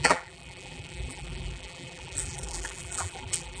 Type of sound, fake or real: fake